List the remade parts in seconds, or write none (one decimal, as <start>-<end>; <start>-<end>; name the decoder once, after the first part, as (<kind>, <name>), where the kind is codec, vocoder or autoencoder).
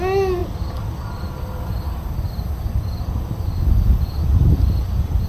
none